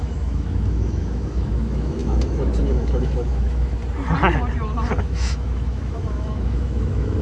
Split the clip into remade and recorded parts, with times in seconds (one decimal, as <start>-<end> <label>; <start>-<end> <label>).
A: 0.0-3.8 remade; 3.8-5.0 recorded; 5.0-7.2 remade

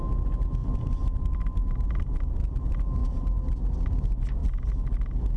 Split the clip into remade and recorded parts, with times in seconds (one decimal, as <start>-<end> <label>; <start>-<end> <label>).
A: 0.0-0.6 recorded; 0.6-1.4 remade; 1.4-5.4 recorded

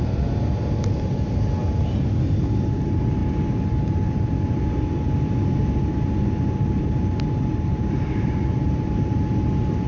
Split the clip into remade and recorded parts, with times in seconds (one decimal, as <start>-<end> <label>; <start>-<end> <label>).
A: 0.0-7.7 recorded; 7.7-9.2 remade; 9.2-9.9 recorded

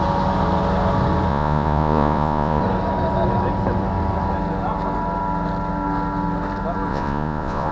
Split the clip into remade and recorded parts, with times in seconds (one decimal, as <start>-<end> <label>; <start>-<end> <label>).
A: 0.0-1.3 recorded; 1.3-2.6 remade; 2.6-6.9 recorded; 6.9-7.7 remade

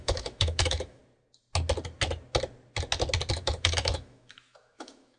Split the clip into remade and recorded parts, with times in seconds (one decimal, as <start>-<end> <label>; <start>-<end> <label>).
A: 0.0-1.0 remade; 1.0-3.4 recorded; 3.4-5.2 remade

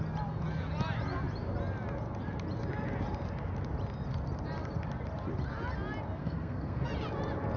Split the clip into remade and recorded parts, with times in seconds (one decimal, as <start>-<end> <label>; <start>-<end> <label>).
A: 0.0-6.2 recorded; 6.2-6.9 remade; 6.9-7.6 recorded

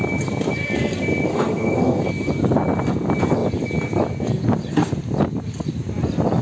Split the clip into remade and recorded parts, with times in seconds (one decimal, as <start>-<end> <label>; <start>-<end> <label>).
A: 0.0-1.3 recorded; 1.3-2.0 remade; 2.0-6.4 recorded